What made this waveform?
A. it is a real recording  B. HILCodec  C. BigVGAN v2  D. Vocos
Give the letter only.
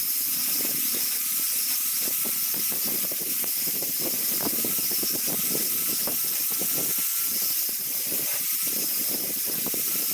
A